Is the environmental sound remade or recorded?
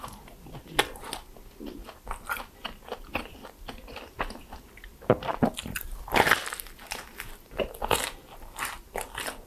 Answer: recorded